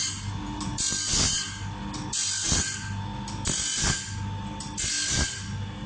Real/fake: real